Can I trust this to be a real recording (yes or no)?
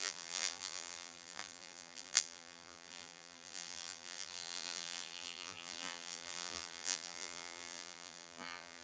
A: no